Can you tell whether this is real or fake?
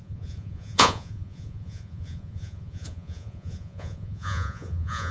fake